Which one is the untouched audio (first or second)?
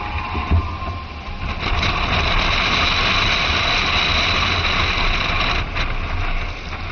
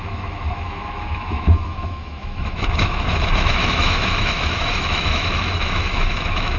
first